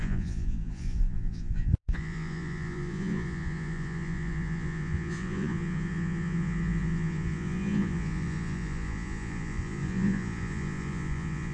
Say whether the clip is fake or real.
fake